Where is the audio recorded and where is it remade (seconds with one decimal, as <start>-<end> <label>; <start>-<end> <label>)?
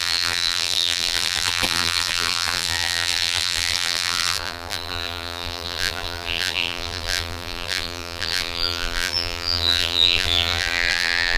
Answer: 0.0-11.4 remade